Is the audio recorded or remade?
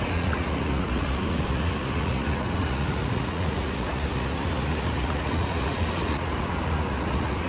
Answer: remade